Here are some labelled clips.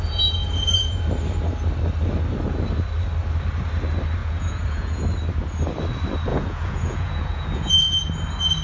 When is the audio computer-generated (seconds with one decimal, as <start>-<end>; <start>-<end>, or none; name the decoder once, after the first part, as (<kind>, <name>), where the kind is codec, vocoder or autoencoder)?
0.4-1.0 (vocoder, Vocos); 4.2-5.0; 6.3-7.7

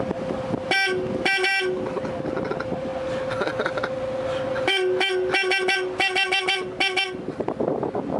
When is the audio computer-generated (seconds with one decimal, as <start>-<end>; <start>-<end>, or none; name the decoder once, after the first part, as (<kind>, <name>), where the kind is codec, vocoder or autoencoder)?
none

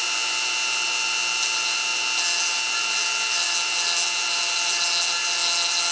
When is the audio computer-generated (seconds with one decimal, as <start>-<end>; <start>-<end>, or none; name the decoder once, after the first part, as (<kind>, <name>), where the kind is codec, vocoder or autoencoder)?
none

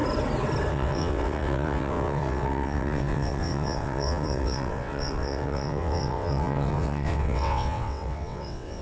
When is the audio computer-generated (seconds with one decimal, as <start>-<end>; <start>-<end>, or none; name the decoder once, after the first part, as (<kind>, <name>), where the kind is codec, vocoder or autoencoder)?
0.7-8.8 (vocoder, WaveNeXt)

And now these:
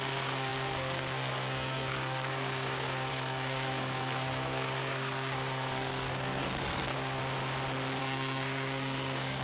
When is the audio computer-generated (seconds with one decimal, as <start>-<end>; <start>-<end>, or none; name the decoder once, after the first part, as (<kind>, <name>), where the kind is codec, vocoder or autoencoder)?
0.0-7.2 (codec, SNAC); 8.0-9.4